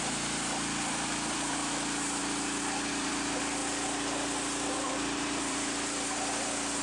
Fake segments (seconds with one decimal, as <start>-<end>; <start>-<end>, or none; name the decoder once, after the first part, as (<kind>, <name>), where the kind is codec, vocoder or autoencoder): 0.0-2.2 (vocoder, BigVGAN v2); 2.9-3.6; 4.7-6.8